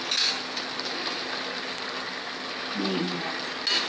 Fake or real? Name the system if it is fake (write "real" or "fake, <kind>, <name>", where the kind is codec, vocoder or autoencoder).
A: real